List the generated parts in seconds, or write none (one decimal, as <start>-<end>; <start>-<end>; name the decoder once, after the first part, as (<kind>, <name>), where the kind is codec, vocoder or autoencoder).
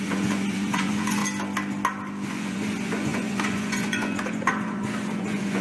0.0-1.2 (vocoder, Vocos); 2.3-5.6